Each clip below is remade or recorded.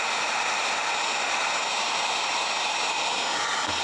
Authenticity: recorded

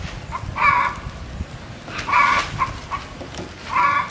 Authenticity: recorded